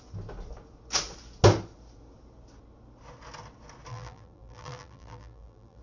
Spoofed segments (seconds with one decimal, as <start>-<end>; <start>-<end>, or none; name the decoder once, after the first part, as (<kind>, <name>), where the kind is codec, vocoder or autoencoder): 3.9-5.8 (vocoder, BigVGAN v2)